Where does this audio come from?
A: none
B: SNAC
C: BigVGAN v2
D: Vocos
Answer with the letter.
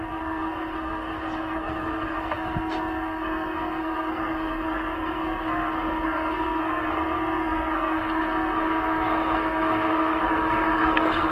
B